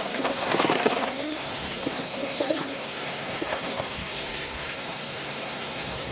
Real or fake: fake